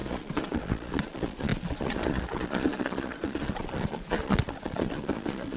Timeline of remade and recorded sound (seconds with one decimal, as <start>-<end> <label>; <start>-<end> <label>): 0.0-5.6 remade